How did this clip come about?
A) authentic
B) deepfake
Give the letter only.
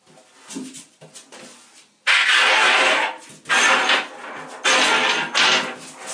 A